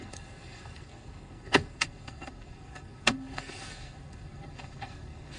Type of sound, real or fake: fake